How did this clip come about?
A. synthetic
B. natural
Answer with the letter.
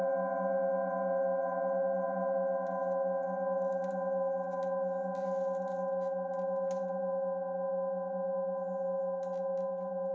B